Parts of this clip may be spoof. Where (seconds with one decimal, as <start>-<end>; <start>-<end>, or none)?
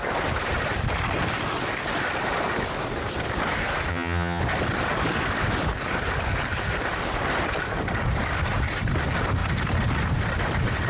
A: 3.9-4.4